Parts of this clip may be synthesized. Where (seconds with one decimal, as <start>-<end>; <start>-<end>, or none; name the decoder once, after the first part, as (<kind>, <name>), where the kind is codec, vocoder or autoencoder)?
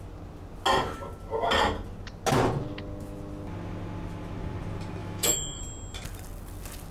5.0-5.6 (autoencoder, DAC-VAE)